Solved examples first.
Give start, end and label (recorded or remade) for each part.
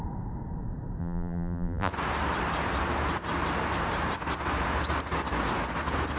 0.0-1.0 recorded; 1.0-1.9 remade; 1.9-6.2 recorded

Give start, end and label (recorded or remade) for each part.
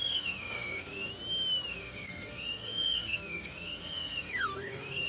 0.0-1.1 remade; 1.1-1.7 recorded; 1.7-5.1 remade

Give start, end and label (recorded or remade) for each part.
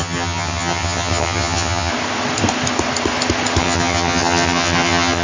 0.0-1.9 remade; 1.9-3.6 recorded; 3.6-5.2 remade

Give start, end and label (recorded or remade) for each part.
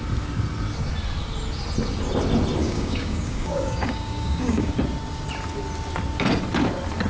0.0-2.6 recorded; 2.6-4.7 remade; 4.7-7.1 recorded